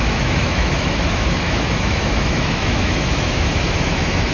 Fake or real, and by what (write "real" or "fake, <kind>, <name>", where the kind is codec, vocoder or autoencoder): fake, autoencoder, DAC-VAE